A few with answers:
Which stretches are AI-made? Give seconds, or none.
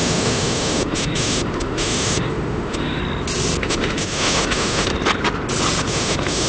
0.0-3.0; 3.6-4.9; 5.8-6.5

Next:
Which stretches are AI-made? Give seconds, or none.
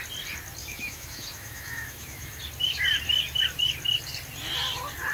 0.6-2.4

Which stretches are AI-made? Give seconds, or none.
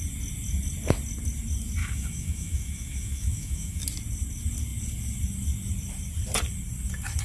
1.8-3.8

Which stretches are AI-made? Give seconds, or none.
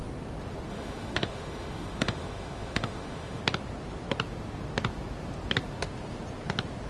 0.7-3.4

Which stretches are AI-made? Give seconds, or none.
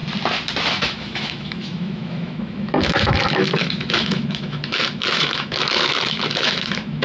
0.7-7.0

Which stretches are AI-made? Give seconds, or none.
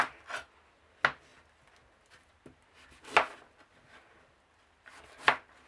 none